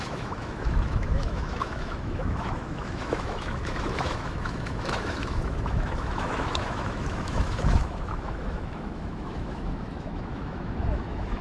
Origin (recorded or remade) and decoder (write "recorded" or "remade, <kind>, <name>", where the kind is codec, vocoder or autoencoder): remade, autoencoder, DAC-VAE